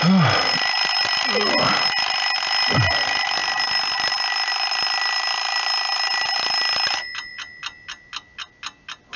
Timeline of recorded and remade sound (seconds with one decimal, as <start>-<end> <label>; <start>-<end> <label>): 0.0-9.2 recorded